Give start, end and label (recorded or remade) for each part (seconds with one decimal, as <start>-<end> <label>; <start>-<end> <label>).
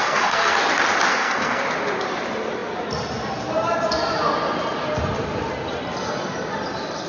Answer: 0.0-0.6 remade; 0.6-1.1 recorded; 1.1-1.6 remade; 1.6-7.1 recorded